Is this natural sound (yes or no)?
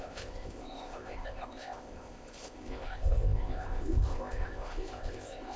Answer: no